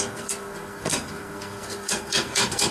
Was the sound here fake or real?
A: fake